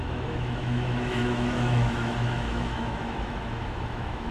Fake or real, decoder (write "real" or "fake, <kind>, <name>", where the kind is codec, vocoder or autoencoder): fake, autoencoder, DAC-VAE